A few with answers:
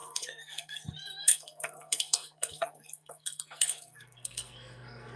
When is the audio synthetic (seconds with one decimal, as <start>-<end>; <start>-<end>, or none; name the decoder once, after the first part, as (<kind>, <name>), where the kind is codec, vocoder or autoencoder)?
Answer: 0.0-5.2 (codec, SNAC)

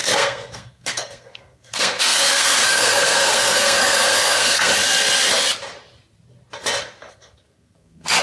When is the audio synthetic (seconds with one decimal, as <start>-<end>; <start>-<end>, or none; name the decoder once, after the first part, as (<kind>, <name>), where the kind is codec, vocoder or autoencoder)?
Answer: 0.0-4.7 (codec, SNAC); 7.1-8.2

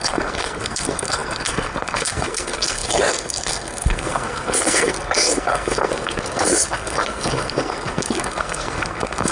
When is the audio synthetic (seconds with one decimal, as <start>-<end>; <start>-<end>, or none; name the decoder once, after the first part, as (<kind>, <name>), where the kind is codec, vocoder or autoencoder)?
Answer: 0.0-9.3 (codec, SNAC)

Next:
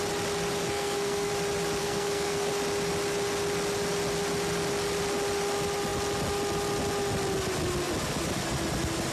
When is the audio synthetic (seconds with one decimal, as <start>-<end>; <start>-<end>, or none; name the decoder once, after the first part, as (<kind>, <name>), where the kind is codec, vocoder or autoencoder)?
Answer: 0.6-1.3 (codec, SNAC); 1.8-2.5

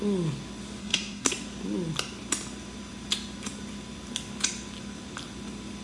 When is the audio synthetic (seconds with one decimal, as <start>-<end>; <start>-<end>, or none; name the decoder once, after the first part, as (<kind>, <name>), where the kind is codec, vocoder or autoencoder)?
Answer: 0.8-1.3 (codec, SNAC)

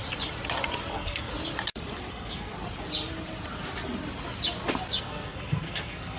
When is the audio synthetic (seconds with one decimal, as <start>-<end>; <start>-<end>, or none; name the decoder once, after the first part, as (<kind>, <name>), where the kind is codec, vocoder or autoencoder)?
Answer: 0.9-1.3 (codec, SNAC); 2.1-2.5; 5.0-6.2